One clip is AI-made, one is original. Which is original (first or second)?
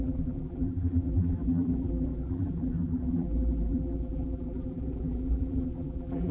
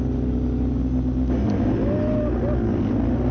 second